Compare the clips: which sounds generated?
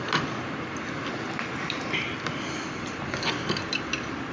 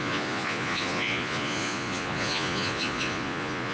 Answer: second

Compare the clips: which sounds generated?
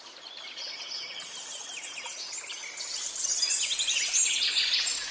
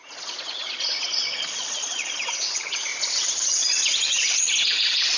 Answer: second